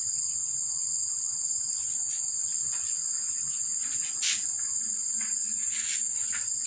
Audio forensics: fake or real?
real